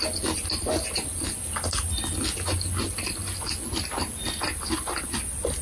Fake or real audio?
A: real